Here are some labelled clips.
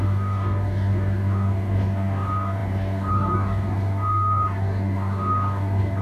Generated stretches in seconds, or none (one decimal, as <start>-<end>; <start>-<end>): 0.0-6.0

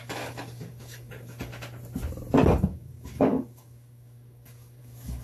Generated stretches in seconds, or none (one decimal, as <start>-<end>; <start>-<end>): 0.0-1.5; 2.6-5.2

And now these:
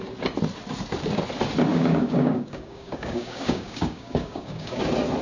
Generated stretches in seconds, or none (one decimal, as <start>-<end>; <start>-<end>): 1.7-4.8

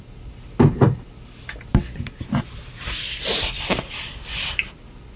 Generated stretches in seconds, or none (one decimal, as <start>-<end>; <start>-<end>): none

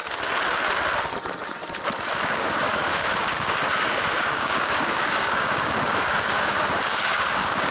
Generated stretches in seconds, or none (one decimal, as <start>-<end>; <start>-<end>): 2.2-7.7

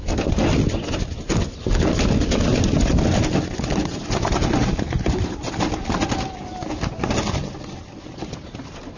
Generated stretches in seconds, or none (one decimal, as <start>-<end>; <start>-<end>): none